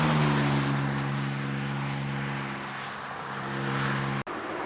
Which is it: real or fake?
real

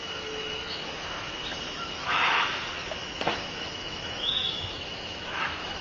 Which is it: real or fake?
fake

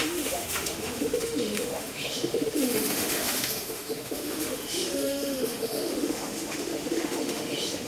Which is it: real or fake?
fake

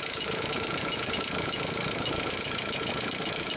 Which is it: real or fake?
fake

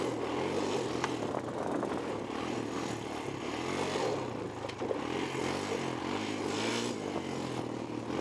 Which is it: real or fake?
real